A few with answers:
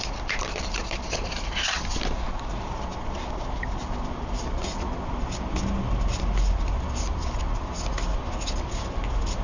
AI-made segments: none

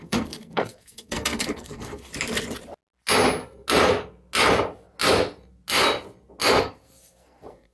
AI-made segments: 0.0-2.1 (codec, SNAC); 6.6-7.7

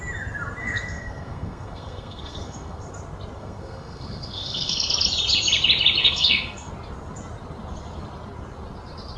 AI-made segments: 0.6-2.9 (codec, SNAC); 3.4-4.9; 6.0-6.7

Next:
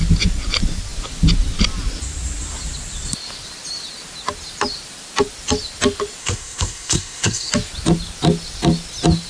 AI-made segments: 6.2-7.5 (codec, SNAC)